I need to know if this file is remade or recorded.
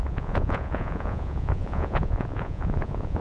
remade